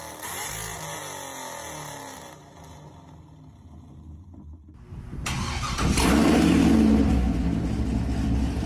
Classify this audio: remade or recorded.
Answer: recorded